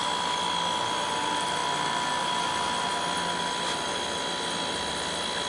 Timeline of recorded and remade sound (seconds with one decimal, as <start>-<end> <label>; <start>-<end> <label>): 0.0-5.5 recorded